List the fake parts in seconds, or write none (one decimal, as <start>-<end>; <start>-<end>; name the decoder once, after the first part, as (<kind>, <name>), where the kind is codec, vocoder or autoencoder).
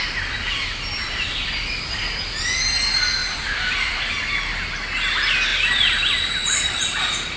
0.4-2.4 (vocoder, BigVGAN v2); 3.2-4.0; 5.5-6.0